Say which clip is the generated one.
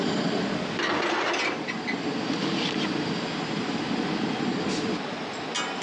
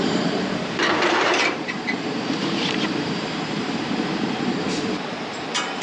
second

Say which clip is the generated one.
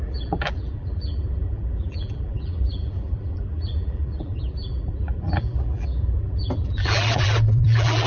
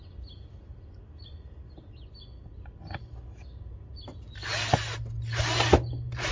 first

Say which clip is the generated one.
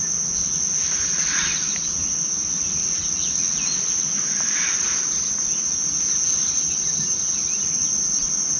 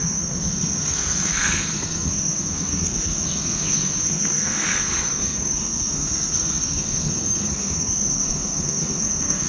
second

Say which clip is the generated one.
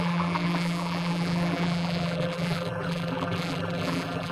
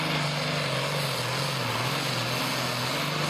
first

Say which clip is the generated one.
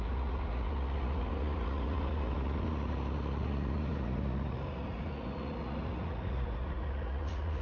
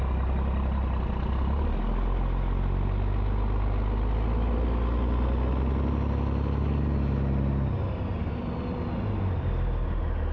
first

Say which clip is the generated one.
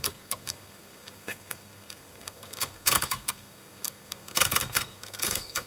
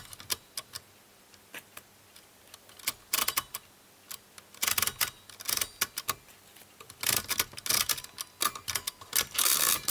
first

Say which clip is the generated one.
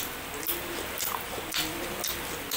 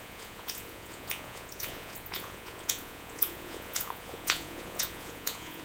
second